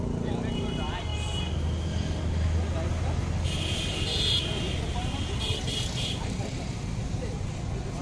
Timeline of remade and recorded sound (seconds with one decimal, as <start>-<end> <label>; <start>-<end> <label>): 0.0-8.0 recorded